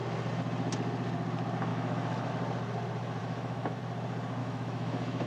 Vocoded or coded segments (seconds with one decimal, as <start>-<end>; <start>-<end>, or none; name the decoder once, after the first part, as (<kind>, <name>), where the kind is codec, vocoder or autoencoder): 1.7-2.3 (autoencoder, DAC-VAE); 3.2-3.8; 4.4-5.3